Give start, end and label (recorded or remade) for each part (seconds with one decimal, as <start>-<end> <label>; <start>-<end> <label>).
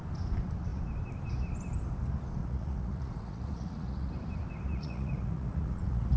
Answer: 0.0-2.4 recorded; 2.4-4.1 remade; 4.1-4.7 recorded; 4.7-6.2 remade